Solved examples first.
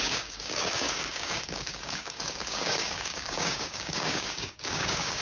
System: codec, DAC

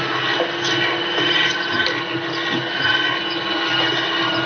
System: none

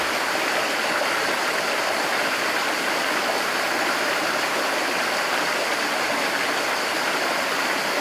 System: none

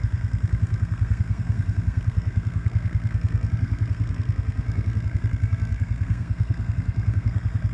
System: codec, SNAC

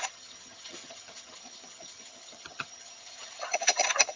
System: vocoder, HiFi-GAN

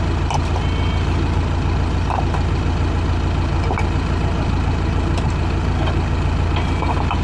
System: none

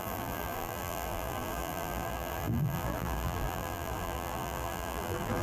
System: vocoder, BigVGAN v2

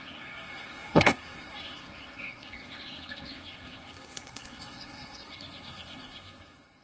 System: codec, SNAC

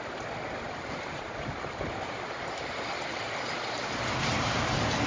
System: none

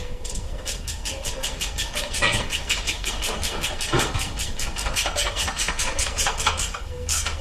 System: codec, SNAC